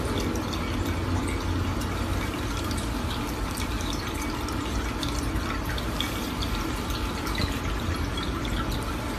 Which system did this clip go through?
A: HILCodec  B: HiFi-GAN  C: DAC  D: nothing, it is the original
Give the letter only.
D